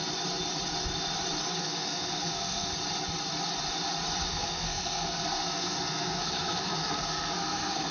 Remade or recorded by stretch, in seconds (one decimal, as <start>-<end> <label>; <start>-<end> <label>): 0.0-1.6 recorded; 1.6-2.7 remade; 2.7-4.3 recorded; 4.3-7.9 remade